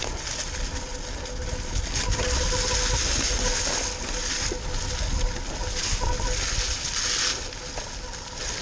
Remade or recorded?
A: recorded